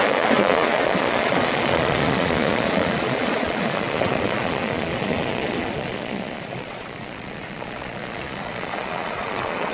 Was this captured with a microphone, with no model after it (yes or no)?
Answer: no